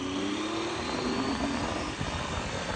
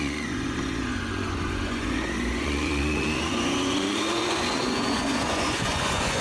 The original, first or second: first